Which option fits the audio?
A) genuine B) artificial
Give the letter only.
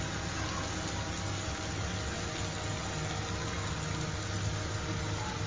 A